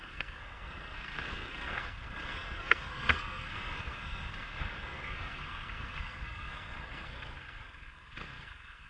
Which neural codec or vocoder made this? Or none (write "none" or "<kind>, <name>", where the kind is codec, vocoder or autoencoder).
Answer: codec, SNAC